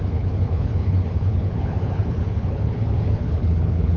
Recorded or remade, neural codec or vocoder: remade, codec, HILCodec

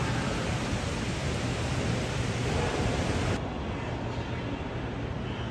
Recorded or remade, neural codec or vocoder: recorded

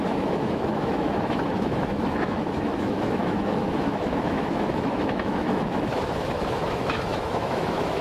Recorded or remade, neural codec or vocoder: remade, autoencoder, DAC-VAE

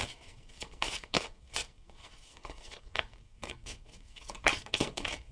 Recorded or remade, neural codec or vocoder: remade, codec, SNAC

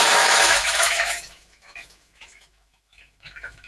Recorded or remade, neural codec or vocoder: remade, autoencoder, DAC-VAE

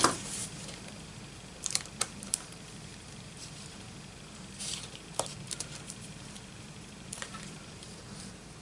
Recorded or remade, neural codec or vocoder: remade, vocoder, BigVGAN v2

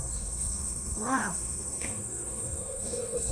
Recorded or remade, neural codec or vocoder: remade, codec, SNAC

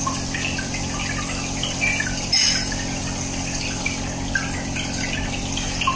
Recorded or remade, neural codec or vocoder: recorded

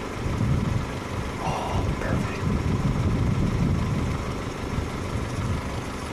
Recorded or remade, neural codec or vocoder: recorded